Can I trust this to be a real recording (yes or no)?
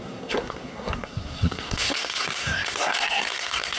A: no